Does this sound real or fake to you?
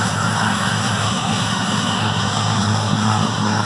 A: fake